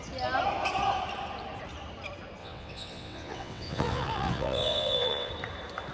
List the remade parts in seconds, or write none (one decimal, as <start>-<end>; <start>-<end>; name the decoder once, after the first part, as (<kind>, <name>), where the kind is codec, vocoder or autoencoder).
2.4-5.3 (vocoder, WaveNeXt)

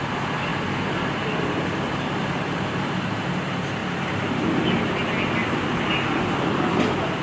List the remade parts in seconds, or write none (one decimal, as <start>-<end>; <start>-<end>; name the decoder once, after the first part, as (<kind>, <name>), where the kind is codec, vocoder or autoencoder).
3.8-4.9 (vocoder, BigVGAN v2); 5.4-5.9